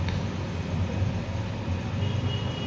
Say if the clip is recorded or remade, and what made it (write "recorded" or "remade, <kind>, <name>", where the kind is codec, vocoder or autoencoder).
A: recorded